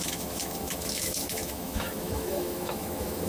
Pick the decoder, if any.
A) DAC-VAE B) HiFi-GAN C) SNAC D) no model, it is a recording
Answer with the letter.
A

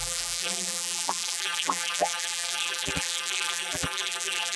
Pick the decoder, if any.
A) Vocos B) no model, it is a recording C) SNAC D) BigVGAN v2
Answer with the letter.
D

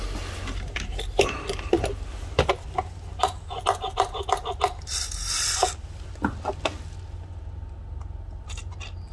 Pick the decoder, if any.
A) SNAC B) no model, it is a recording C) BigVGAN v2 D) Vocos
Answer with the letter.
B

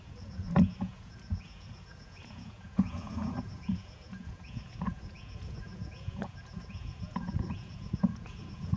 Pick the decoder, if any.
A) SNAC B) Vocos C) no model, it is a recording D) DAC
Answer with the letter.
B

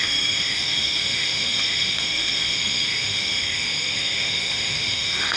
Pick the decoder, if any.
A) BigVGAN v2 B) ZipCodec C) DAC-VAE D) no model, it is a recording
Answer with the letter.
C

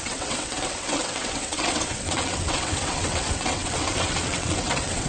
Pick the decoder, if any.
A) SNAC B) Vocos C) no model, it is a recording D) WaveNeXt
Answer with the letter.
D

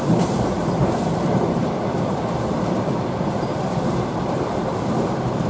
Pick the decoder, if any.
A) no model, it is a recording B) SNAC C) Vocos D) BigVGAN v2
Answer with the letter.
D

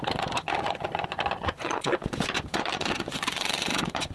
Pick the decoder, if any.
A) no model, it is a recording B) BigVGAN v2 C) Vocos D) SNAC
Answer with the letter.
C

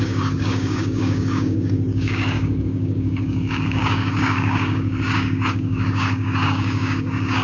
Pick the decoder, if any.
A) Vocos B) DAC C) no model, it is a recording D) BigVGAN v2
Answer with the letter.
B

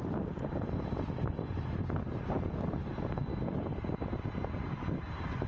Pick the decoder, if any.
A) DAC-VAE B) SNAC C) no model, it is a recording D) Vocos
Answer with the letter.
C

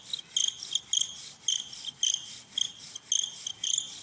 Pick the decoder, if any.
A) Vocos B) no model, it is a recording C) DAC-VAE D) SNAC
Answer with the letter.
B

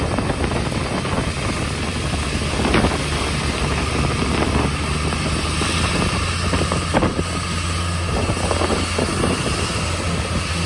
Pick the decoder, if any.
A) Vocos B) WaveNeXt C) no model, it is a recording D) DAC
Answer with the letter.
C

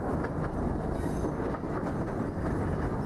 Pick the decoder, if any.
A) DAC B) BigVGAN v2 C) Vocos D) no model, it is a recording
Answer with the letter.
D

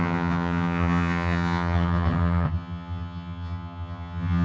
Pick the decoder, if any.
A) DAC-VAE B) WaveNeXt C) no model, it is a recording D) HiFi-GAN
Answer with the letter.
D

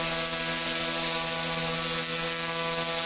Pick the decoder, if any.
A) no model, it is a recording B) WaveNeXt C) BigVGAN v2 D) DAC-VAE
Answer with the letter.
A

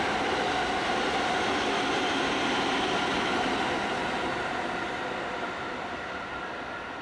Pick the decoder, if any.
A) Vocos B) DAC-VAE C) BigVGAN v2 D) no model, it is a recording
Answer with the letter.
D